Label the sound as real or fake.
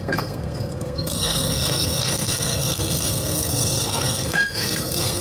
fake